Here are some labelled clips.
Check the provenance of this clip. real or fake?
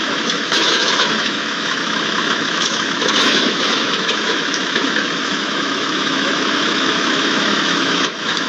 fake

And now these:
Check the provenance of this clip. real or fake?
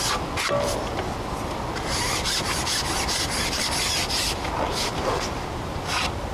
real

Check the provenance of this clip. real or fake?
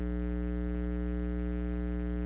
real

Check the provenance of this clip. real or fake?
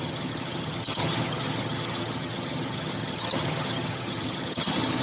fake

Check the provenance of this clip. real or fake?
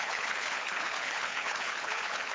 fake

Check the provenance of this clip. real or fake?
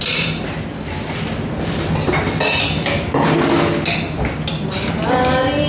real